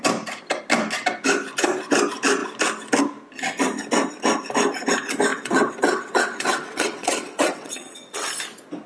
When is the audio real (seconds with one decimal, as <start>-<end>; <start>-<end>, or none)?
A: 0.0-5.3; 8.3-8.9